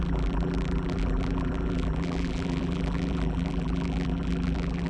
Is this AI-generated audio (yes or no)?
yes